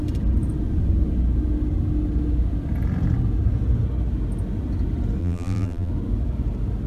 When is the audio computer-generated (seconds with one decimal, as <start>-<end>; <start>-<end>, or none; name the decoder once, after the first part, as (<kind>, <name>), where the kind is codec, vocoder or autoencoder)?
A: 5.2-5.9 (vocoder, BigVGAN v2)